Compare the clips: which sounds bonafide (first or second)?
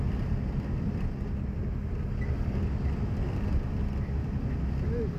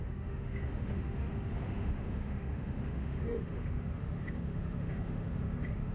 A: first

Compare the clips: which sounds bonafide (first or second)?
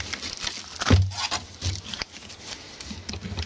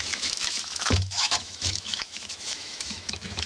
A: first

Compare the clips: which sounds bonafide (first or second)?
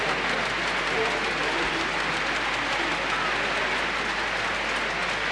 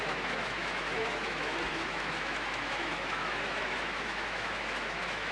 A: first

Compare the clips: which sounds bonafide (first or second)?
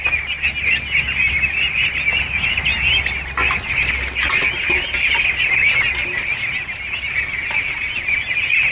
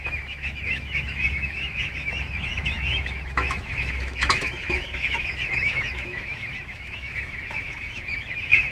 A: first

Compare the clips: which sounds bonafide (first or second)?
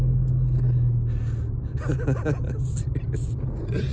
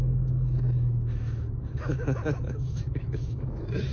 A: first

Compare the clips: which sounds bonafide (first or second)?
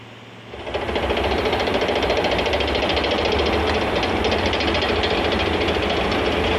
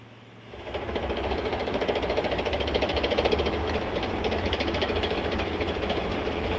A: first